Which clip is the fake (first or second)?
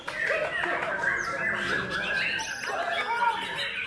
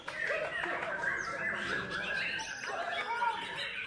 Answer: second